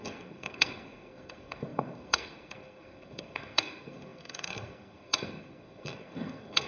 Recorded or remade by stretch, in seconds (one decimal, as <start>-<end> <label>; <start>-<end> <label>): 0.0-6.7 remade